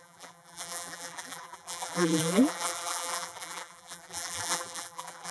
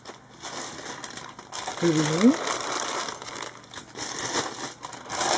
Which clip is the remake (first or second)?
first